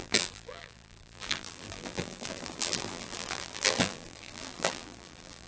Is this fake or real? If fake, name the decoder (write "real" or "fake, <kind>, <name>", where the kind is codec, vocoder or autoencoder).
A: fake, vocoder, BigVGAN v2